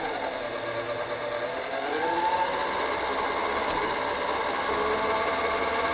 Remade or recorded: recorded